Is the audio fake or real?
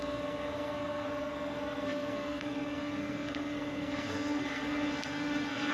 fake